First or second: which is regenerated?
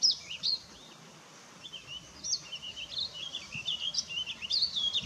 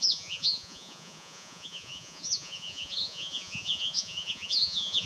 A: second